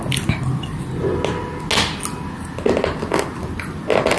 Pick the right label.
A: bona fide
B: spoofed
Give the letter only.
A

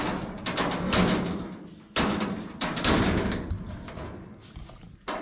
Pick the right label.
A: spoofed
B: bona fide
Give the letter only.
B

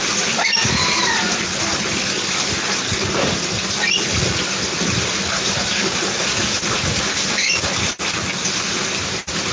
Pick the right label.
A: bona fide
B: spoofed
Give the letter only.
A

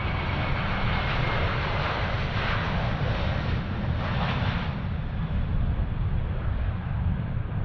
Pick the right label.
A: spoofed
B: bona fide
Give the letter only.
B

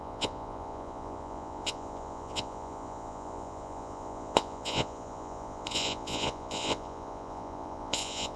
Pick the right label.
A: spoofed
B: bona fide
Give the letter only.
A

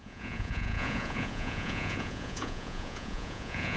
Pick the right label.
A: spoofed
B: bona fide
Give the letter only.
A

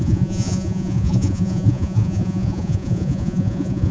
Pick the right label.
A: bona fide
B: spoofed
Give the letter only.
B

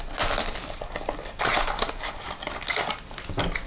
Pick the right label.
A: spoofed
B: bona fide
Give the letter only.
B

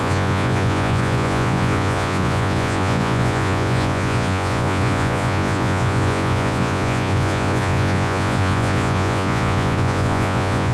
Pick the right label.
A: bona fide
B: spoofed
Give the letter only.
B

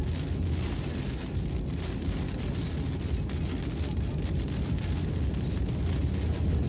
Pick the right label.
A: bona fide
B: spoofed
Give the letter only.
A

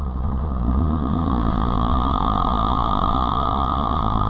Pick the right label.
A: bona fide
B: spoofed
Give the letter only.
B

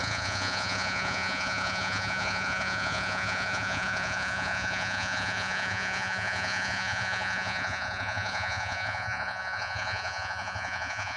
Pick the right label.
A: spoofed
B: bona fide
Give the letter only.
A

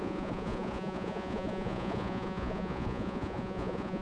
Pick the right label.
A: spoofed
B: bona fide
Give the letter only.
A